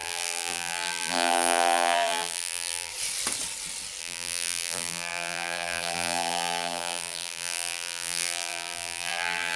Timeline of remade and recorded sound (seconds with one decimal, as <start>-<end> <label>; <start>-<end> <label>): 0.0-2.9 remade; 2.9-4.0 recorded; 4.0-9.6 remade